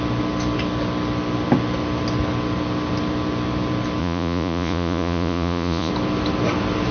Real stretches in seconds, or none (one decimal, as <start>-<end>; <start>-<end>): 0.0-4.0; 5.9-6.9